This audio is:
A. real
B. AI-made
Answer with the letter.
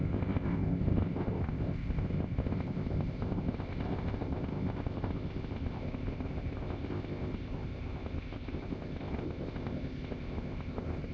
B